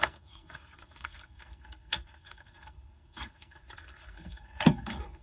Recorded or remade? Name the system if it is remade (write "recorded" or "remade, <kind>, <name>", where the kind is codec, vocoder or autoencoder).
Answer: remade, codec, SNAC